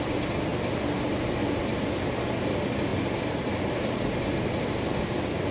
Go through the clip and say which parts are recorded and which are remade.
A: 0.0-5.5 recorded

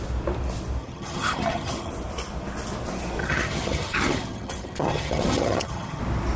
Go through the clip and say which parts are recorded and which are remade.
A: 0.0-0.8 recorded; 0.8-1.9 remade; 1.9-3.2 recorded; 3.2-6.0 remade; 6.0-6.4 recorded

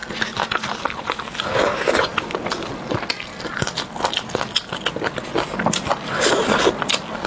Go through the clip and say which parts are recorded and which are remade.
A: 0.0-7.3 recorded

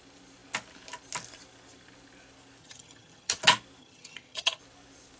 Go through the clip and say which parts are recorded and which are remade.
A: 0.0-2.6 recorded; 2.6-3.4 remade; 3.4-3.8 recorded; 3.8-4.6 remade; 4.6-5.2 recorded

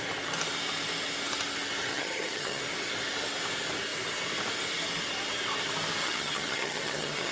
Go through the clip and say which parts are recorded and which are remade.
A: 0.0-1.9 recorded; 1.9-2.6 remade; 2.6-6.0 recorded; 6.0-7.3 remade

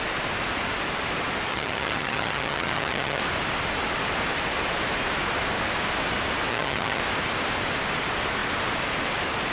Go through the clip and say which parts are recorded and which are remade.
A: 0.0-1.5 recorded; 1.5-3.2 remade; 3.2-6.5 recorded; 6.5-7.0 remade; 7.0-9.5 recorded

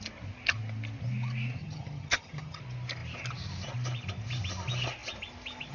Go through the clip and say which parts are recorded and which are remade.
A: 0.0-1.6 recorded; 1.6-2.6 remade; 2.6-5.7 recorded

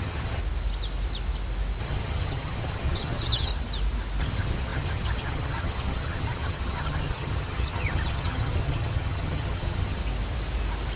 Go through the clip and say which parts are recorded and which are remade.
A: 0.0-0.4 remade; 0.4-1.8 recorded; 1.8-3.5 remade; 3.5-4.2 recorded; 4.2-10.0 remade; 10.0-11.0 recorded